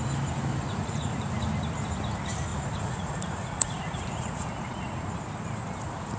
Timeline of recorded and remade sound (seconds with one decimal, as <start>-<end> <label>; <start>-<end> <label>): 0.0-0.6 recorded; 0.6-1.3 remade; 1.3-2.5 recorded; 2.5-5.1 remade; 5.1-6.2 recorded